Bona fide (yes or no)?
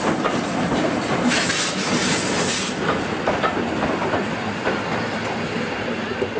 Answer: yes